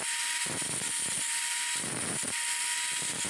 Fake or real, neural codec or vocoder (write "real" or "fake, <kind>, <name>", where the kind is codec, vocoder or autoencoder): real